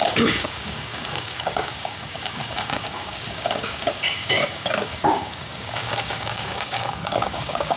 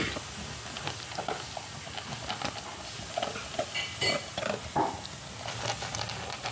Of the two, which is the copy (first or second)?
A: first